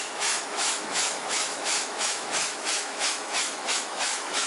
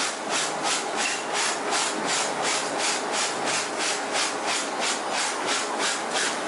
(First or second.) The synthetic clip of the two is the first